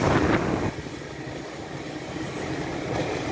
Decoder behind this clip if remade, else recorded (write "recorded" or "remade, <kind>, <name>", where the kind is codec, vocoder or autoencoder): recorded